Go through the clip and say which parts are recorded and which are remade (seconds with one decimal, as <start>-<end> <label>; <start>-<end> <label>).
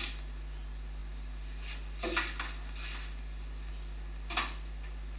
0.0-5.2 recorded